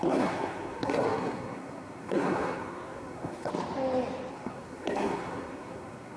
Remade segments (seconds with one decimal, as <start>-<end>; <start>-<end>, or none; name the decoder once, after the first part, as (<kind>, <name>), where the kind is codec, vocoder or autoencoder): 0.0-3.5 (codec, SNAC); 4.3-6.2